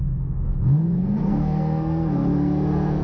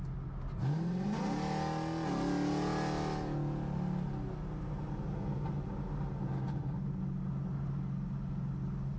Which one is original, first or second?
second